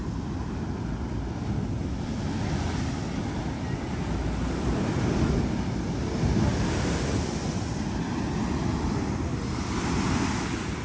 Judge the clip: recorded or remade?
recorded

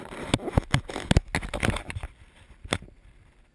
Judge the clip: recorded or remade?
recorded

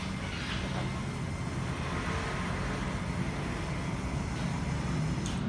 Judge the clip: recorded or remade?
recorded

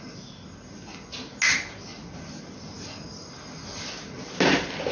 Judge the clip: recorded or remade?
recorded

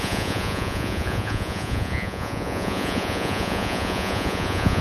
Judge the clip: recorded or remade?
remade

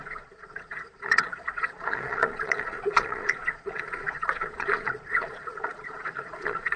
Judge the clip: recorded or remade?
remade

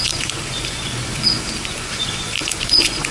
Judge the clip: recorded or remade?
remade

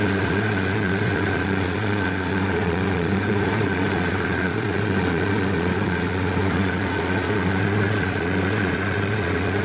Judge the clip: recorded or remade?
remade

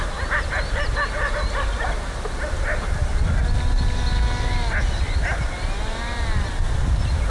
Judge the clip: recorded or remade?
recorded